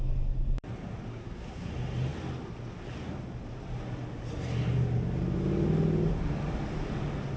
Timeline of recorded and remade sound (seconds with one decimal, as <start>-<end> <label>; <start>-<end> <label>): 0.0-1.1 recorded; 1.1-1.7 remade; 1.7-7.4 recorded